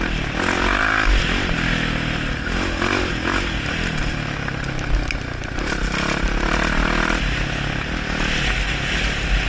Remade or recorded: recorded